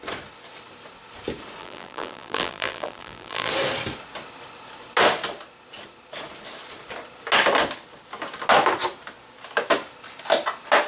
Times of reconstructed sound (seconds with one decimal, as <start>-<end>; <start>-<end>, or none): 1.6-3.5